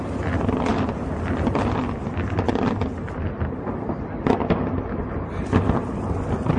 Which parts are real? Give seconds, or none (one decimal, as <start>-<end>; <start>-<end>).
0.0-6.6